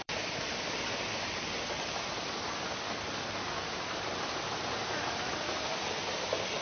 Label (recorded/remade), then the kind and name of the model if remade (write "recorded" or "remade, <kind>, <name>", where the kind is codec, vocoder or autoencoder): remade, vocoder, BigVGAN v2